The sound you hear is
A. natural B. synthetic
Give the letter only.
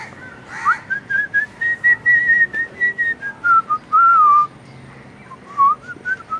A